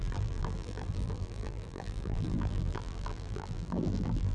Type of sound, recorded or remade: remade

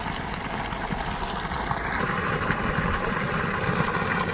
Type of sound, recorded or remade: recorded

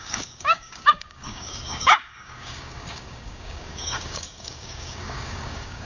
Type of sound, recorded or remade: remade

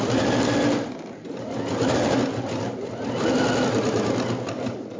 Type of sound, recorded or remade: recorded